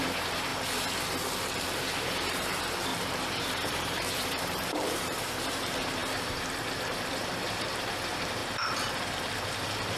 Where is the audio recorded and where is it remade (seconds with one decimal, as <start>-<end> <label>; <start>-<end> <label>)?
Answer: 0.0-0.5 remade; 0.5-2.0 recorded; 2.0-8.4 remade; 8.4-9.3 recorded; 9.3-10.0 remade